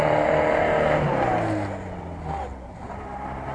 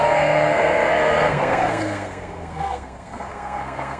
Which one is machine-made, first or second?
second